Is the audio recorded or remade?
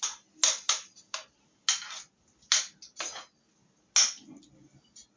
recorded